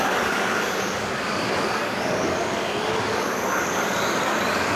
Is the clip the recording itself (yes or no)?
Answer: no